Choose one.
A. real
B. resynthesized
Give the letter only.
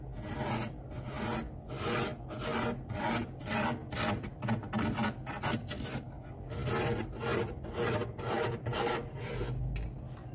A